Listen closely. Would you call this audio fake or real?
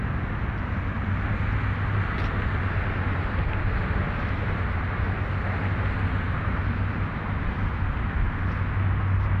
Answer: real